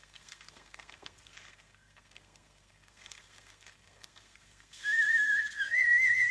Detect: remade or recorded remade